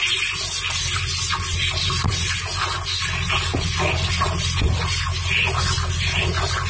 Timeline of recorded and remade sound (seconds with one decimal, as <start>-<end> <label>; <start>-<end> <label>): 0.0-6.7 recorded